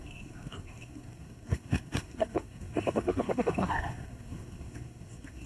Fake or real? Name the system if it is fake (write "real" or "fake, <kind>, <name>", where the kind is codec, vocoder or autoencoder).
fake, codec, SNAC